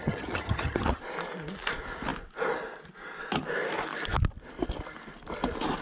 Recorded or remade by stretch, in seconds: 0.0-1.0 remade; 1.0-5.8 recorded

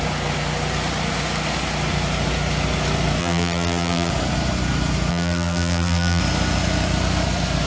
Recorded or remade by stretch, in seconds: 0.0-3.2 recorded; 3.2-4.1 remade; 4.1-5.1 recorded; 5.1-6.2 remade; 6.2-7.7 recorded

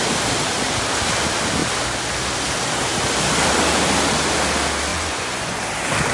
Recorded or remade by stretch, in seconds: 0.0-4.9 recorded; 4.9-5.6 remade; 5.6-6.1 recorded